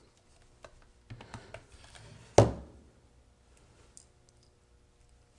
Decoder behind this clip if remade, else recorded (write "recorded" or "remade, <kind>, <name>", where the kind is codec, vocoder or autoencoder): recorded